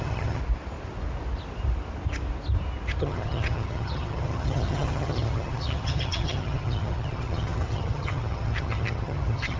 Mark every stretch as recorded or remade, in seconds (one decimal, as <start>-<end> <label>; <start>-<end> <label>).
0.0-0.4 remade; 0.4-3.0 recorded; 3.0-9.6 remade